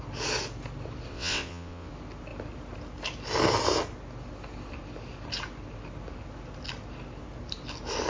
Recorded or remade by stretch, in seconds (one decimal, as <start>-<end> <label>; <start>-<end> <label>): 0.0-1.1 recorded; 1.1-1.9 remade; 1.9-8.1 recorded